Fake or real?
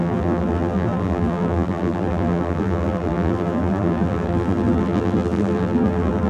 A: fake